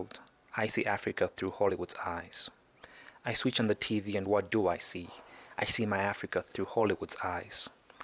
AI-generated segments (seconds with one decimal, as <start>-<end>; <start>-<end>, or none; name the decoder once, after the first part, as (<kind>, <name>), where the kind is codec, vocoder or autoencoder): 1.1-1.7 (vocoder, Vocos); 6.5-8.0

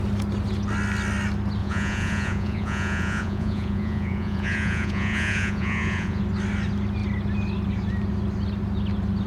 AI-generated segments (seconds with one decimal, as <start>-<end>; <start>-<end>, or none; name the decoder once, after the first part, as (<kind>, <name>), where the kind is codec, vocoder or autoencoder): 1.6-6.2 (vocoder, Vocos)

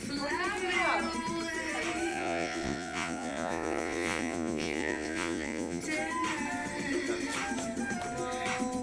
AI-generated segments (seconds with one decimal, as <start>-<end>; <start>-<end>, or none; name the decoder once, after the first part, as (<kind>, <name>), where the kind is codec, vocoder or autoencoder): 2.1-5.8 (vocoder, Vocos)

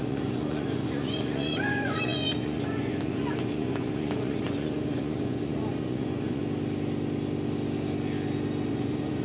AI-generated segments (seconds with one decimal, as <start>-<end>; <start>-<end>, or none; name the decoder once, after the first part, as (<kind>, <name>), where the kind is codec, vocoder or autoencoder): 0.0-6.4 (vocoder, Vocos); 8.7-9.2